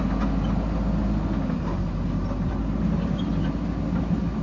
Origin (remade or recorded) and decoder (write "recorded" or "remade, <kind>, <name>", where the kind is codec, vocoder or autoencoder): recorded